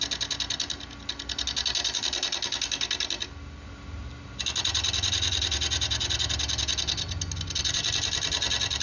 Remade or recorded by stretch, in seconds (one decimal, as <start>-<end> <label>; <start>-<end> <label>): 0.0-8.8 recorded